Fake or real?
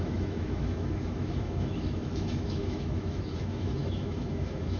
fake